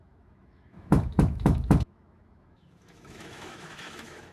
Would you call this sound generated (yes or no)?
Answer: yes